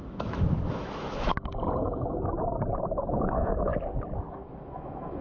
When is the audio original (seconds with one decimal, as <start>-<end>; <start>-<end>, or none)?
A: 1.3-2.8; 3.7-4.3